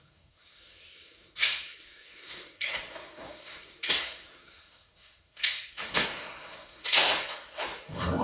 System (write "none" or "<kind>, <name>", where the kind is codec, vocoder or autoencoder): codec, SNAC